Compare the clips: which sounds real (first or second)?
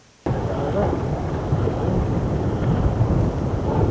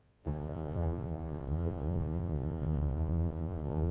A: first